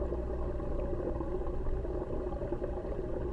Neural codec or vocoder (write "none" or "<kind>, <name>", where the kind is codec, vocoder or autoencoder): none